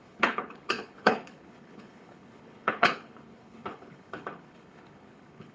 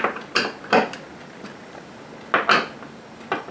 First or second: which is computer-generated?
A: first